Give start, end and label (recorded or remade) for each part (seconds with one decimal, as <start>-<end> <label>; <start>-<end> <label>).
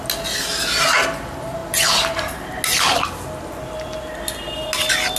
0.0-5.2 recorded